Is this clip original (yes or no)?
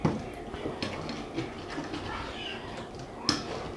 yes